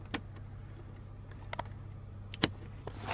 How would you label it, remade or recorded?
recorded